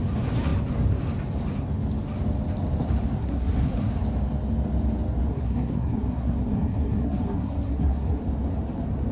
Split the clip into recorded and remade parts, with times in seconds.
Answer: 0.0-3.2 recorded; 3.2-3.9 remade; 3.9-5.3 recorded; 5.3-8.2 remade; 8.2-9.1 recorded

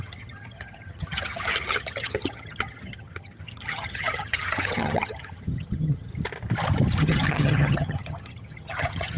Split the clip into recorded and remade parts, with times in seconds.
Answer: 0.0-6.1 remade; 6.1-7.0 recorded; 7.0-9.2 remade

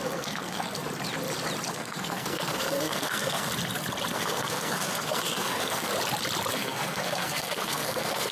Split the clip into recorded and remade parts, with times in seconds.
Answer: 0.0-0.8 remade; 0.8-1.7 recorded; 1.7-3.5 remade; 3.5-4.1 recorded; 4.1-5.9 remade; 5.9-6.5 recorded; 6.5-8.3 remade

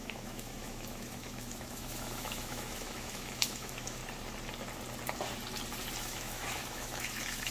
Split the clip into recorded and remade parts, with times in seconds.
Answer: 0.0-4.0 remade; 4.0-6.0 recorded; 6.0-7.5 remade